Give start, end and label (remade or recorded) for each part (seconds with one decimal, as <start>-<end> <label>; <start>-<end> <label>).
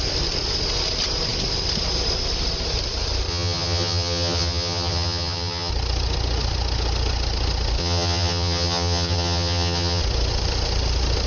0.0-3.3 recorded; 3.3-5.7 remade; 5.7-7.8 recorded; 7.8-10.0 remade; 10.0-11.3 recorded